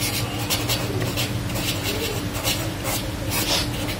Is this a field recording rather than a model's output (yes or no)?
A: yes